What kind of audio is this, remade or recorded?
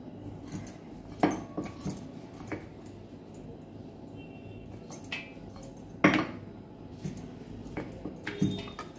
recorded